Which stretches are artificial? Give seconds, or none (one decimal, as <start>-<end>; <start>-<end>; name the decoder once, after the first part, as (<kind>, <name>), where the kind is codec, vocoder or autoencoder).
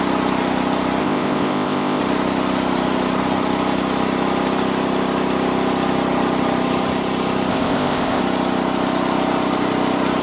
1.0-2.0 (codec, ZipCodec); 7.5-8.2